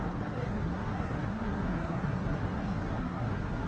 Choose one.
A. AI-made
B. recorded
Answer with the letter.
A